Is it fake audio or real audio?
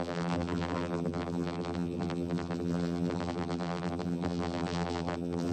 fake